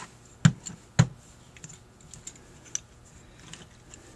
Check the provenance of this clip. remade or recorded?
recorded